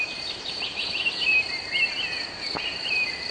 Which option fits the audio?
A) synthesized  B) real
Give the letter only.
A